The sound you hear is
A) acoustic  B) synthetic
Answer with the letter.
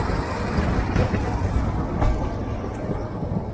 A